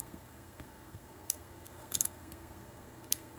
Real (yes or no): no